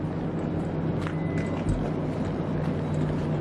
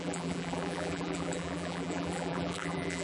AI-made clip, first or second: second